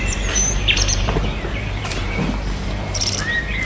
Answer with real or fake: fake